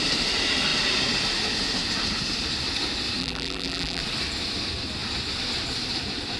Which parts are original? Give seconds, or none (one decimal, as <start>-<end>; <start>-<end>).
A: 0.0-3.2; 4.0-6.4